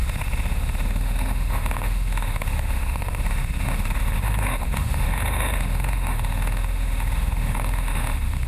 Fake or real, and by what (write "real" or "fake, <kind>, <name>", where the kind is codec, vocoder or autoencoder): fake, autoencoder, DAC-VAE